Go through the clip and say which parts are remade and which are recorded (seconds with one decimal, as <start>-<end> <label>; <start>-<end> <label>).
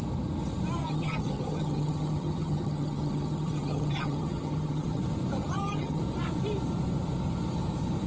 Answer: 0.0-0.8 recorded; 0.8-5.0 remade; 5.0-5.4 recorded; 5.4-6.0 remade; 6.0-8.1 recorded